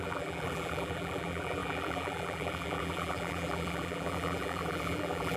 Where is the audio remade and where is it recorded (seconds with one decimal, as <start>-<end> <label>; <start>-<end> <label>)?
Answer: 0.0-5.4 remade